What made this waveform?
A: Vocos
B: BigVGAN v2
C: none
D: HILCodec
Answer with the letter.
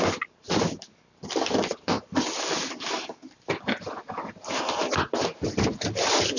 C